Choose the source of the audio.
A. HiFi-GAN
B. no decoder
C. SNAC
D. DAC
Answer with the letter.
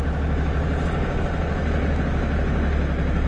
B